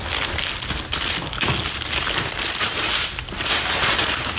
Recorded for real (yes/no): yes